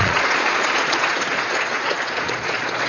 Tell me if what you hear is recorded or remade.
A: remade